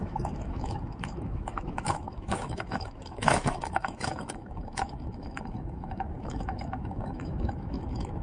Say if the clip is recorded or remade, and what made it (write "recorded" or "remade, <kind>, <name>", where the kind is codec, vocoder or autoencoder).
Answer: remade, autoencoder, DAC-VAE